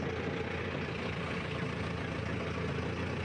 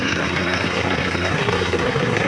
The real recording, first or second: first